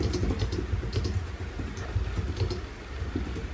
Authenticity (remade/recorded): recorded